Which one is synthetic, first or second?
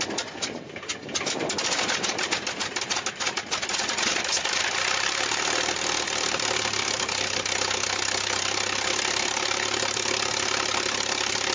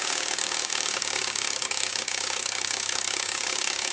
second